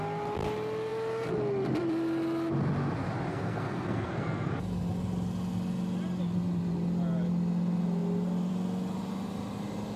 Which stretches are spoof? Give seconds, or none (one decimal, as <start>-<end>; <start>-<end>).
3.3-4.5